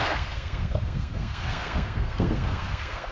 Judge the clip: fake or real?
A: fake